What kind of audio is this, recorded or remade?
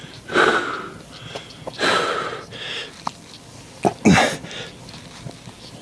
recorded